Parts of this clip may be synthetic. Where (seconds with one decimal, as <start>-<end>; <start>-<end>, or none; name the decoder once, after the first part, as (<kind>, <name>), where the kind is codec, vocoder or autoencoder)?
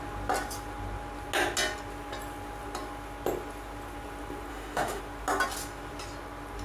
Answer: 4.5-5.0 (autoencoder, DAC-VAE)